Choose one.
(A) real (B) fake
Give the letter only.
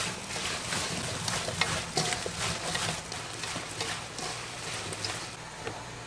A